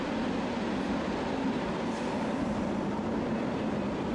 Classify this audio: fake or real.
real